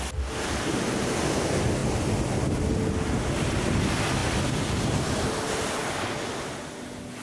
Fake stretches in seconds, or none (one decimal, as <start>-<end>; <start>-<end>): none